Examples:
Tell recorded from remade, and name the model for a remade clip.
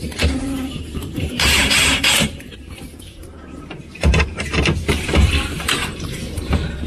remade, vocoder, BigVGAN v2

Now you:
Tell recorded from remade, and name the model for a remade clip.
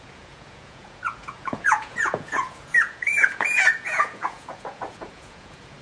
remade, vocoder, Vocos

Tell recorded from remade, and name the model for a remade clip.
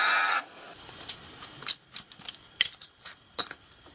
recorded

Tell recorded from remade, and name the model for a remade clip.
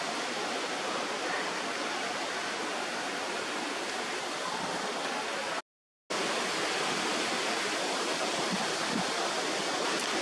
recorded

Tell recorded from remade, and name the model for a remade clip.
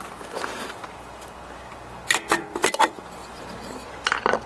recorded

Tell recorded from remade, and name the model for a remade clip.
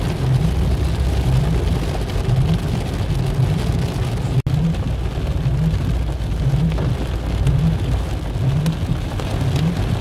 recorded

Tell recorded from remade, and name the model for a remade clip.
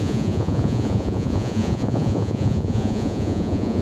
remade, vocoder, Vocos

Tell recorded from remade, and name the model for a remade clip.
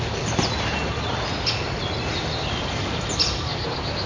recorded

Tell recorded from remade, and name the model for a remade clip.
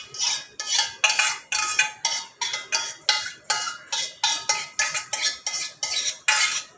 recorded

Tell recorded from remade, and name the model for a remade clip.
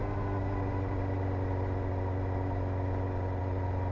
recorded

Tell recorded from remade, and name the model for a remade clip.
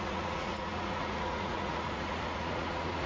remade, vocoder, Vocos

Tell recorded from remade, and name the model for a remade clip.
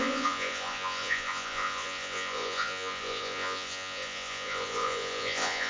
remade, vocoder, Vocos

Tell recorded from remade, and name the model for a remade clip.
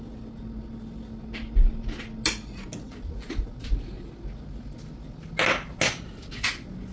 recorded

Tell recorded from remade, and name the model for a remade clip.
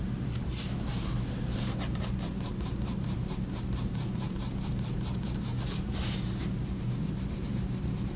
remade, vocoder, BigVGAN v2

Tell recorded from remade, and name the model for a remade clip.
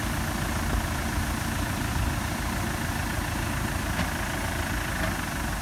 recorded